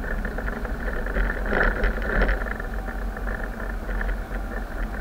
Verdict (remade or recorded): recorded